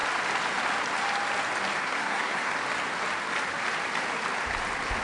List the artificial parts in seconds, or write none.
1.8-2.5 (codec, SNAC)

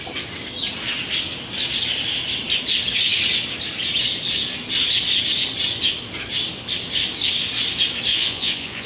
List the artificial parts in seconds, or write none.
8.1-8.9 (vocoder, Vocos)

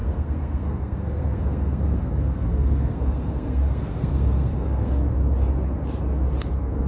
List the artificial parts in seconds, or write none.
0.0-5.1 (codec, SNAC); 6.5-6.9

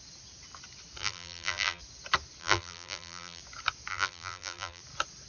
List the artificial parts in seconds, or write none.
1.0-1.8 (vocoder, BigVGAN v2); 2.4-3.4; 3.9-4.8

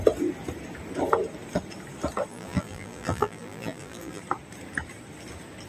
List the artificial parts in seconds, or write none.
2.3-4.2 (vocoder, BigVGAN v2)